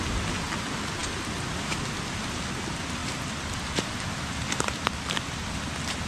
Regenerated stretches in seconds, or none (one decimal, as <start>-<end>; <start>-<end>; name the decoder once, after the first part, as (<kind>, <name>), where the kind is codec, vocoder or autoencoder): none